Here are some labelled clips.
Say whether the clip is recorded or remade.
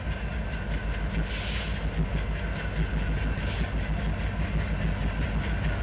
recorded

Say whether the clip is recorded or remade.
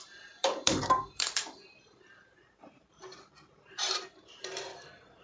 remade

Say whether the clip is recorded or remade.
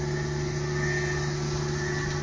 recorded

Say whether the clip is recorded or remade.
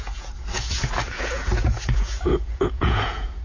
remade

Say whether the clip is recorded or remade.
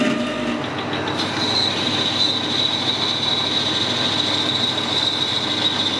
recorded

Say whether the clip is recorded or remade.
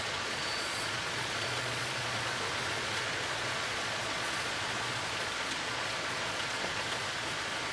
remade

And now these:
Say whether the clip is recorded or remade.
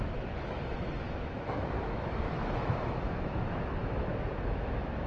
remade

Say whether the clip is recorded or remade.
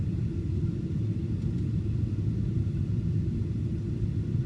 recorded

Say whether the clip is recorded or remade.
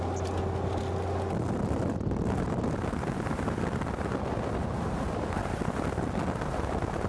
recorded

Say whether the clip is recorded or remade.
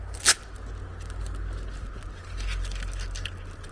recorded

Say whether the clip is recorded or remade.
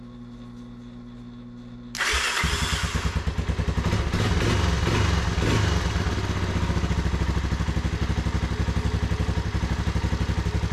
recorded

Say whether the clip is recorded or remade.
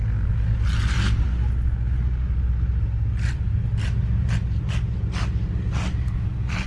recorded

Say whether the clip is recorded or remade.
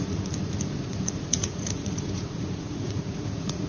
remade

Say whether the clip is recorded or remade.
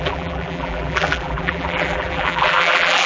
remade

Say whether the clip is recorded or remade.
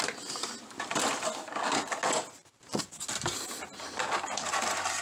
recorded